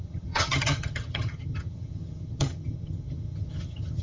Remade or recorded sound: remade